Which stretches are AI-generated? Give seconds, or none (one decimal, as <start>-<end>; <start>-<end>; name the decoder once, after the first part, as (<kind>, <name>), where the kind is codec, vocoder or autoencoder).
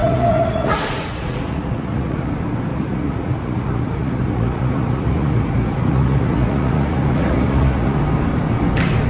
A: 0.0-2.3 (vocoder, Vocos); 2.7-8.0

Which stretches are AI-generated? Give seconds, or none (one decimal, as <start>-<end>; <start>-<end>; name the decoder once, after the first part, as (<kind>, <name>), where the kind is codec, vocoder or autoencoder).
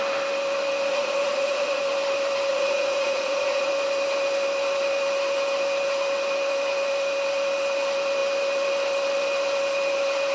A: 0.9-1.8 (vocoder, Vocos); 2.5-3.7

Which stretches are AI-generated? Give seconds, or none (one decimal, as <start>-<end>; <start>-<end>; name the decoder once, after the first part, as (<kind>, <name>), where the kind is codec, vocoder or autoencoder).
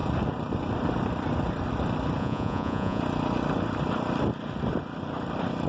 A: 2.2-3.0 (vocoder, Vocos)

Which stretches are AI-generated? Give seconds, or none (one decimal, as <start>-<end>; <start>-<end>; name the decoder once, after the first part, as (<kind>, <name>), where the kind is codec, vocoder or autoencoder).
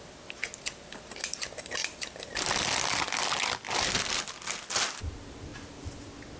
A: none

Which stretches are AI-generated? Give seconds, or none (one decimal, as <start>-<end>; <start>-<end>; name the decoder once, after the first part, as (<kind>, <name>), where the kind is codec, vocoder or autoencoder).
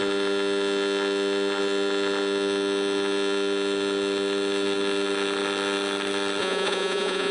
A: 6.4-7.3 (vocoder, Vocos)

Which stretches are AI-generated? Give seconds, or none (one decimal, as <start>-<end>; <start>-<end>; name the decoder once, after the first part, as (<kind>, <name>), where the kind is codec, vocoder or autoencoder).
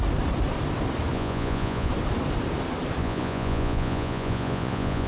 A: 1.1-1.9 (vocoder, Vocos); 3.0-5.1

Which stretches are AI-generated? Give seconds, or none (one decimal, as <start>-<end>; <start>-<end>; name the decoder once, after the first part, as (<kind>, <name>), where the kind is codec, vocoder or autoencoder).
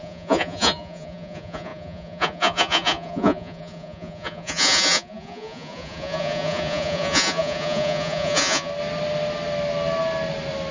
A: 0.0-8.7 (vocoder, Vocos)